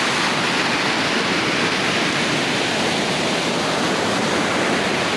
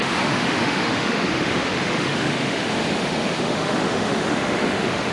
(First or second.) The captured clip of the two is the first